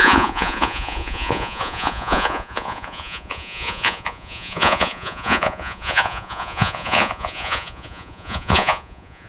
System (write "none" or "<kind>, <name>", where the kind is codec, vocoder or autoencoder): vocoder, Vocos